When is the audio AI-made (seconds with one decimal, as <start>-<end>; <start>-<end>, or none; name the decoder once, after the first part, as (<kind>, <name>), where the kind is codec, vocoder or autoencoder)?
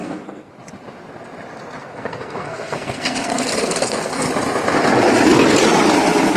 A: 0.0-0.5 (codec, SNAC); 1.8-4.3